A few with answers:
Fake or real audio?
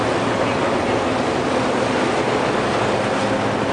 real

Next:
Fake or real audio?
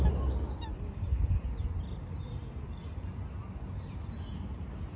real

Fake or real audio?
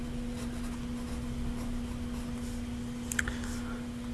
real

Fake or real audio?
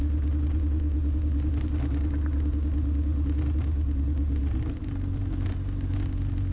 real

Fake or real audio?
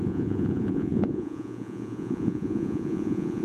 fake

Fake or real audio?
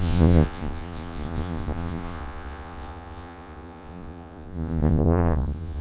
fake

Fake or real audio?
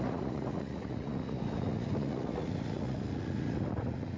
fake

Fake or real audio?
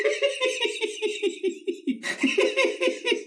real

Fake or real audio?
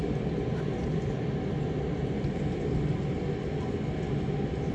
real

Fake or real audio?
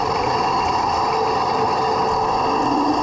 real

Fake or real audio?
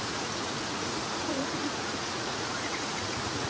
fake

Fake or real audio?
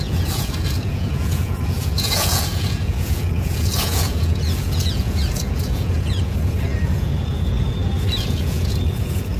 fake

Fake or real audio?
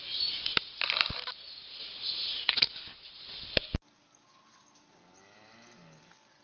real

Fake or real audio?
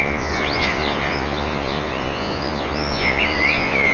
fake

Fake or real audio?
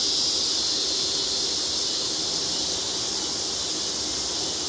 real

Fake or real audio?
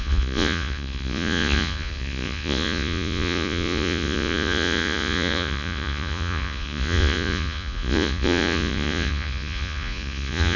fake